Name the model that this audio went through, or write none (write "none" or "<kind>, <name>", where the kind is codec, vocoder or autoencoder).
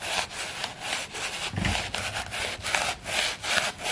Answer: none